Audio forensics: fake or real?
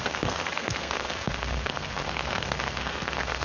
fake